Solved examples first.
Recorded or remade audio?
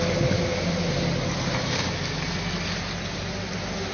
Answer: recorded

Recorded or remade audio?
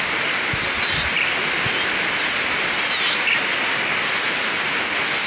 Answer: recorded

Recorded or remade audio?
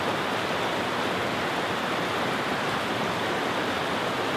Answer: recorded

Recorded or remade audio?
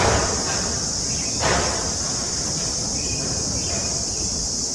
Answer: recorded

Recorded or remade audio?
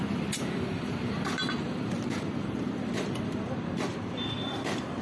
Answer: remade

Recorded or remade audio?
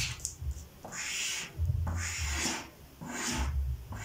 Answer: recorded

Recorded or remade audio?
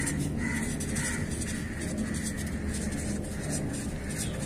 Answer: recorded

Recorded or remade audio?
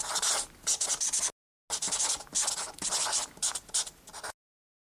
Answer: recorded